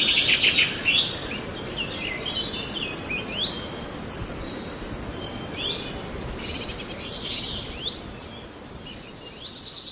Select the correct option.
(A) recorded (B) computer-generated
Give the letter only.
A